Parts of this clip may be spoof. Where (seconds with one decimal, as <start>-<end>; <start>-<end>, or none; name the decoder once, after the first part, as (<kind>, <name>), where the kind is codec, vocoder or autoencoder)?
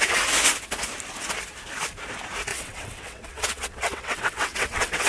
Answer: 2.5-5.1 (vocoder, WaveNeXt)